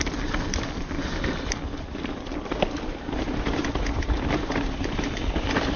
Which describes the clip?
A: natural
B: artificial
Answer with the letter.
B